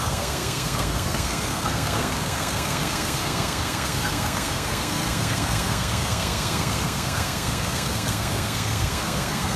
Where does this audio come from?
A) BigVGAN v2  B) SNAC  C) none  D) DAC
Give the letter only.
B